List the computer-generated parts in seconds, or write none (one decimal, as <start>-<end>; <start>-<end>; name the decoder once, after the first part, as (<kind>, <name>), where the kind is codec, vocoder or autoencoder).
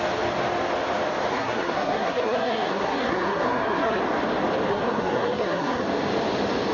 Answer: 1.3-4.0 (codec, SNAC); 4.7-5.8